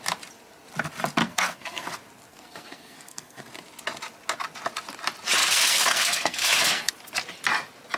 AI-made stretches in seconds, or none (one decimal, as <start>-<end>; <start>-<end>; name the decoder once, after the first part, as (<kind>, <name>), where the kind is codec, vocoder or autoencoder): 1.2-1.9 (codec, SNAC); 2.3-3.4; 5.4-6.9